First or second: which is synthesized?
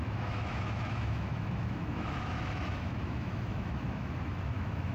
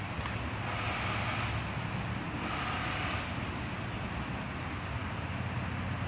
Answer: first